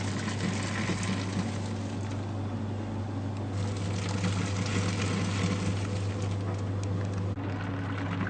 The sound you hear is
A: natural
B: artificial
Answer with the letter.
A